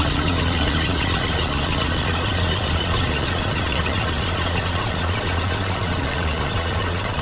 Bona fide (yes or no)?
no